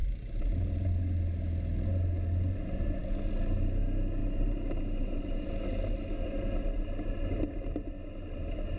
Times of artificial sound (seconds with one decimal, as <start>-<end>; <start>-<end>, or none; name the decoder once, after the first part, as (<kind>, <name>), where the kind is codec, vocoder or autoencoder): 0.0-1.0 (vocoder, BigVGAN v2); 4.2-5.5